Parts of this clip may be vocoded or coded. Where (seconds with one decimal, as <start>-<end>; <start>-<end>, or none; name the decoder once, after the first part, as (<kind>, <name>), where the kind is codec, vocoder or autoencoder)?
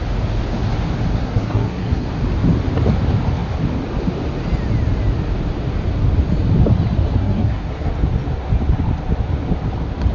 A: 1.1-2.1 (codec, SNAC); 7.2-7.9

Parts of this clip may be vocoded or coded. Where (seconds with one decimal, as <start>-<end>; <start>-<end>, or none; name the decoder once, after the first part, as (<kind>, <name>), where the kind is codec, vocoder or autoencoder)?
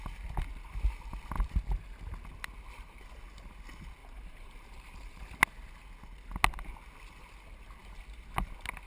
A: 4.0-5.2 (vocoder, BigVGAN v2)